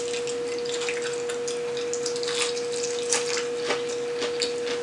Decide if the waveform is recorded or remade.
recorded